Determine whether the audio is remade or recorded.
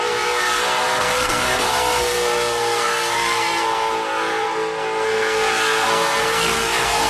remade